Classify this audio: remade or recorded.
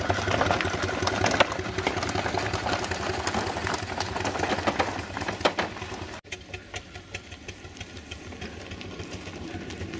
recorded